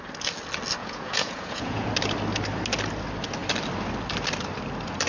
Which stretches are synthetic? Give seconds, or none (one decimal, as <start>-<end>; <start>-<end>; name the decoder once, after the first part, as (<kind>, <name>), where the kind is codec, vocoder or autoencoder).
0.8-1.9 (vocoder, Vocos)